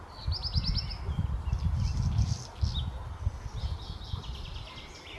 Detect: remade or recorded recorded